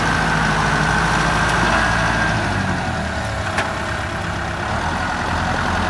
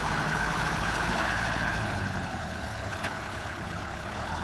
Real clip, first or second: first